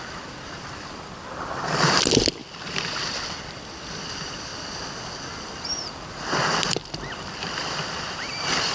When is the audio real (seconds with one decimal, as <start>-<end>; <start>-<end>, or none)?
2.4-3.1; 4.5-5.1